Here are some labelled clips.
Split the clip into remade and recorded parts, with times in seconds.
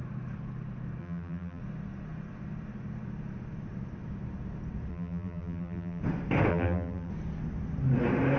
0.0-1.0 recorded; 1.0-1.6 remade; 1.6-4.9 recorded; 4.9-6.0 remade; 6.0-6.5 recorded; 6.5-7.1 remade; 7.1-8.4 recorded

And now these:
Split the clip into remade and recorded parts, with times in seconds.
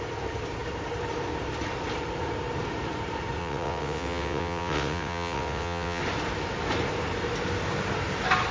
0.0-3.4 recorded; 3.4-6.0 remade; 6.0-8.5 recorded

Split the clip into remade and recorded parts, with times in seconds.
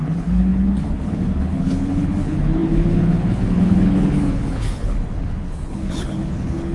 0.0-6.7 remade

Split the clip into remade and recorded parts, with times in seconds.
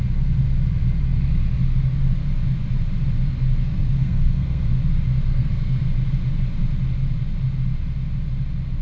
0.0-3.6 recorded; 3.6-4.8 remade; 4.8-5.3 recorded; 5.3-5.9 remade; 5.9-8.8 recorded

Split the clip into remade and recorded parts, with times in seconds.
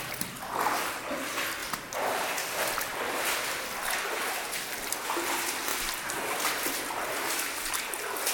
0.0-8.3 recorded